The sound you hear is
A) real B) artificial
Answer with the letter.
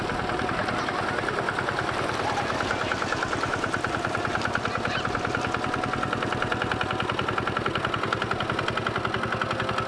A